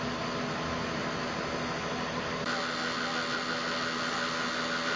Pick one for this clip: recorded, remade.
recorded